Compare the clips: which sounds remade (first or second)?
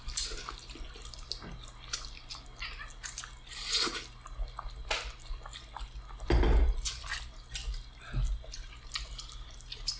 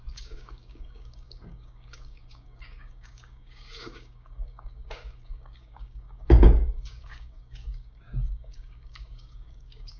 second